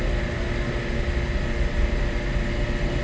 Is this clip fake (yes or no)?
no